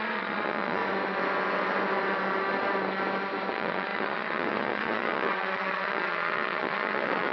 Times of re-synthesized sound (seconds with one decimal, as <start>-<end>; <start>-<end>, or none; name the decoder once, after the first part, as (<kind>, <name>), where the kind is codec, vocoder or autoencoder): 0.0-0.8 (vocoder, Vocos); 3.5-7.3